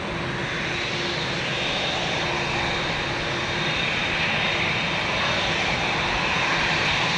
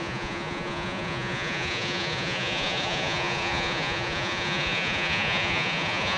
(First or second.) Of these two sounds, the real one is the first